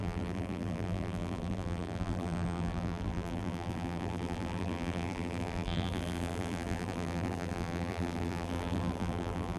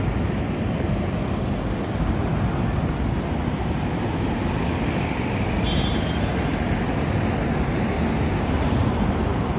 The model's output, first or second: first